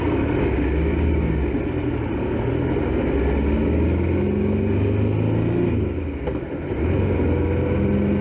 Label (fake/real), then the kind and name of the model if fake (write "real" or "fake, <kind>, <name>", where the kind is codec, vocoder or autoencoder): real